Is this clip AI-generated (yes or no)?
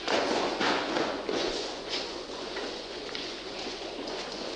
yes